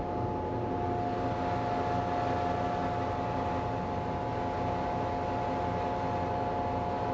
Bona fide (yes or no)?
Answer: yes